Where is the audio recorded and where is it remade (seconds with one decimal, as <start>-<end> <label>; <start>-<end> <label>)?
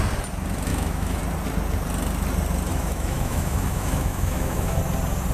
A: 0.0-0.7 recorded; 0.7-1.2 remade; 1.2-2.7 recorded; 2.7-4.8 remade; 4.8-5.3 recorded